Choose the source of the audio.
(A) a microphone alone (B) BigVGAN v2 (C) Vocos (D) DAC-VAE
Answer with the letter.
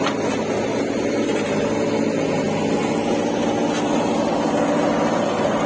A